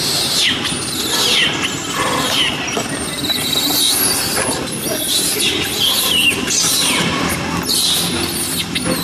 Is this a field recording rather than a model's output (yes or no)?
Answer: yes